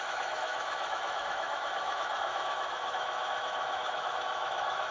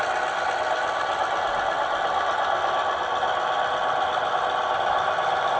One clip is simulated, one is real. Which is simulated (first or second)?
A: first